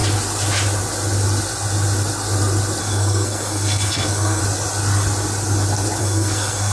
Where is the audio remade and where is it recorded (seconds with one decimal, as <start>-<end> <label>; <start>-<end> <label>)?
0.0-2.8 recorded; 2.8-4.4 remade; 4.4-6.0 recorded; 6.0-6.7 remade